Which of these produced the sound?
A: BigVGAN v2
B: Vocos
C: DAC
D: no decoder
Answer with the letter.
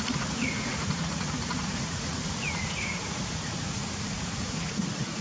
B